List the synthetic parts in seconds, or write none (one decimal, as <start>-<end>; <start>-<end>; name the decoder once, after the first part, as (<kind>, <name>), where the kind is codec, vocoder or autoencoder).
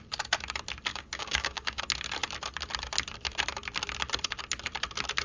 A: 0.9-1.8 (codec, DAC)